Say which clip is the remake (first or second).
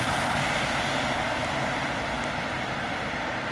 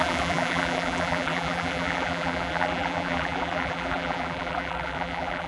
second